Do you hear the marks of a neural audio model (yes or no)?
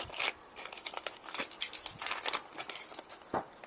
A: no